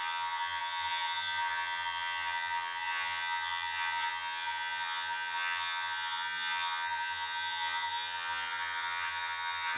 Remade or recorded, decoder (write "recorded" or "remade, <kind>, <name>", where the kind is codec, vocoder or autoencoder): remade, vocoder, HiFi-GAN